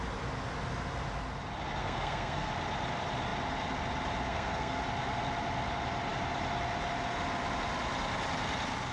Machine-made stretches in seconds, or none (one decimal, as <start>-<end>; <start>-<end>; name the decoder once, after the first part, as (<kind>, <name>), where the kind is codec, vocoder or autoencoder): 1.8-2.5 (codec, SNAC); 4.3-4.8